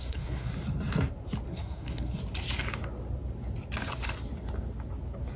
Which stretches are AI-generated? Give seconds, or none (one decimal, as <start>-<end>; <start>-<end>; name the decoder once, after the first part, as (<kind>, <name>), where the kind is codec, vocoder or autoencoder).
0.0-0.5 (codec, SNAC); 1.5-2.2